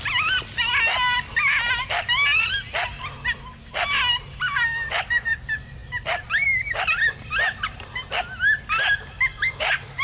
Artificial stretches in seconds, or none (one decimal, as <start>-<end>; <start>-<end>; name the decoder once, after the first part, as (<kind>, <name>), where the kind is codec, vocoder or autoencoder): none